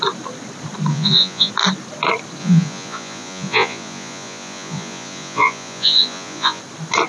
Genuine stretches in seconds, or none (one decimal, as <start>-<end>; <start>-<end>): 0.0-0.9; 1.5-2.4; 6.6-7.1